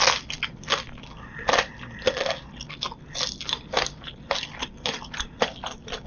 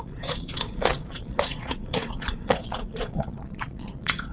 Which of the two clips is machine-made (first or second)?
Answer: second